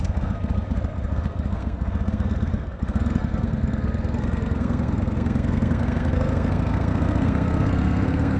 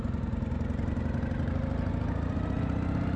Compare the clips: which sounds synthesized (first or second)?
first